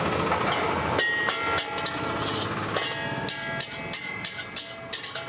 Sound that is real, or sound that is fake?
real